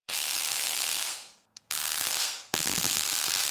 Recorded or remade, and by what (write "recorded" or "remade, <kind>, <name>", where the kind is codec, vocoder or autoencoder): remade, codec, SNAC